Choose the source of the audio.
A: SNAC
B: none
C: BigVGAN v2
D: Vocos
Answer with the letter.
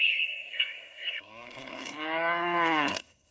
A